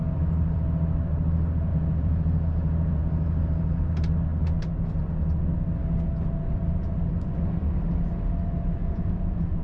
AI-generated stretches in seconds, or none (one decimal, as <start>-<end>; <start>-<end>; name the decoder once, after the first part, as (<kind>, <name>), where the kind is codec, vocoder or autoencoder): 1.7-3.0 (vocoder, Vocos); 8.8-9.6